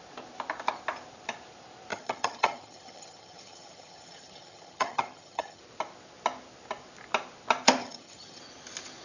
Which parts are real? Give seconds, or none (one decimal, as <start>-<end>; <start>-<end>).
0.0-1.9; 5.6-7.8; 8.4-9.0